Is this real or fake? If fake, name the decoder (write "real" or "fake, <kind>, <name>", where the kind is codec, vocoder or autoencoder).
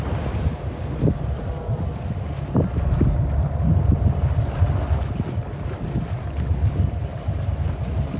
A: real